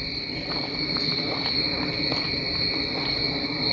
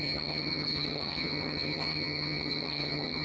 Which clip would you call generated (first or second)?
second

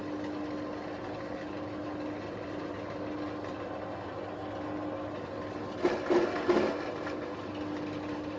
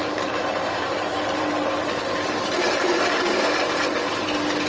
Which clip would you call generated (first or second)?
second